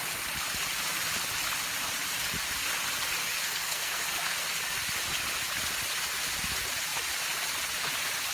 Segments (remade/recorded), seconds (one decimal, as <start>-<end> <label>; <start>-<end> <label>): 0.0-3.2 recorded; 3.2-4.5 remade; 4.5-8.3 recorded